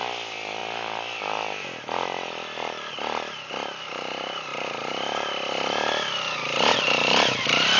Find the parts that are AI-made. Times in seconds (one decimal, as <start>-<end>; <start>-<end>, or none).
0.0-4.5; 5.7-7.8